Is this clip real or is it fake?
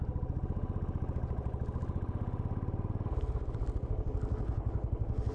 real